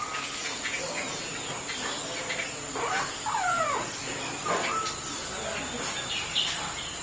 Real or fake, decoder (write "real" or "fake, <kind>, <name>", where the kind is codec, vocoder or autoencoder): real